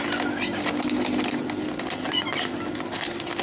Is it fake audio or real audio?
real